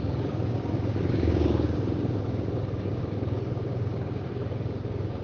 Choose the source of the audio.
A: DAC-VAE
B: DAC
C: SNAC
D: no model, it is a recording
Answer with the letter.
B